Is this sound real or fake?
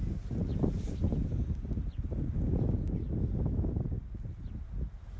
real